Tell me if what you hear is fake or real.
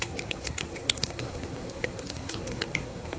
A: fake